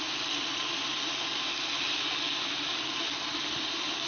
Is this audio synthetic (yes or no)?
no